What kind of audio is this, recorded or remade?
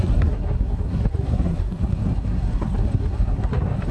remade